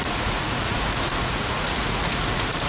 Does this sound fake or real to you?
fake